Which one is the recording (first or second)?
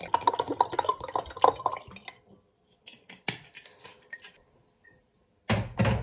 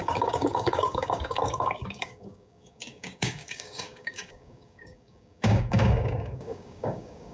first